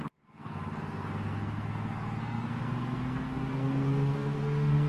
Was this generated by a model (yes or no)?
yes